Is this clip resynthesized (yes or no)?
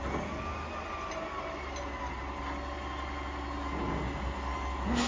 no